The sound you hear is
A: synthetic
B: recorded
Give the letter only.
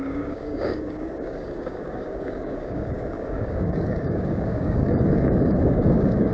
A